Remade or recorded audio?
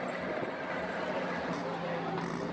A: recorded